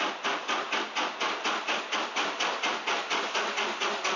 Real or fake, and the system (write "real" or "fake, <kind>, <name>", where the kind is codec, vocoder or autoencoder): real